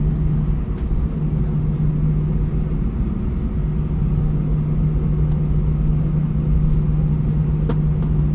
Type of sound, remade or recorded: recorded